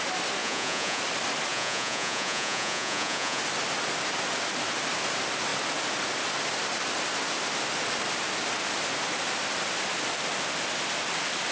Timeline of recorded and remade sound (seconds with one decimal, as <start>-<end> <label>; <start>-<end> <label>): 0.0-0.4 recorded; 0.4-1.0 remade; 1.0-1.5 recorded; 1.5-3.4 remade; 3.4-11.5 recorded